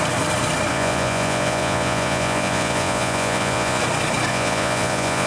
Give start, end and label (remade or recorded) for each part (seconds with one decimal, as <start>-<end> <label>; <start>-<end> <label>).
0.0-0.7 recorded; 0.7-3.8 remade; 3.8-4.3 recorded; 4.3-5.3 remade